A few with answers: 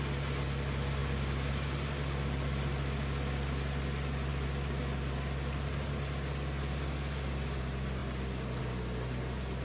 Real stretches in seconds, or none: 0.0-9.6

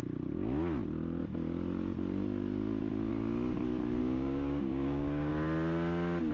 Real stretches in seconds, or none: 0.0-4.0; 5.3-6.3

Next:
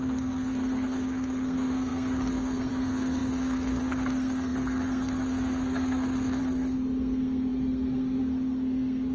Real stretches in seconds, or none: none